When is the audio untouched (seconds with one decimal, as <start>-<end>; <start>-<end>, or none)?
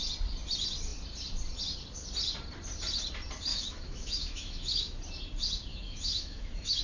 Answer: 0.0-3.5; 5.0-5.7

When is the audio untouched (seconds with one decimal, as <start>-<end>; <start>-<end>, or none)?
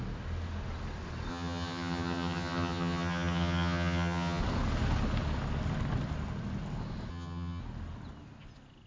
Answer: 0.0-1.3; 4.4-7.1; 7.6-8.9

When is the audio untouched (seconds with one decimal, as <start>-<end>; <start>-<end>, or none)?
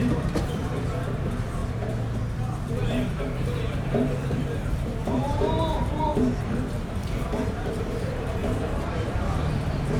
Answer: 1.6-3.2; 8.4-9.1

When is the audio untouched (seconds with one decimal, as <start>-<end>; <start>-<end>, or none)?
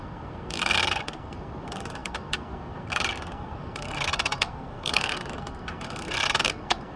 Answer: none